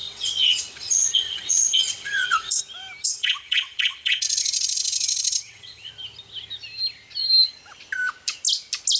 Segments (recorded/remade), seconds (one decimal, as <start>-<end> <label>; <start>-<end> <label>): 0.0-2.6 remade; 2.6-3.0 recorded; 3.0-5.9 remade; 5.9-9.0 recorded